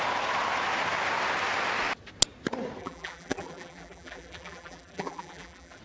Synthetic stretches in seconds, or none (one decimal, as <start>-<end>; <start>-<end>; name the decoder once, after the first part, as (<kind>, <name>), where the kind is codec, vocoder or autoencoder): 2.8-5.8 (vocoder, BigVGAN v2)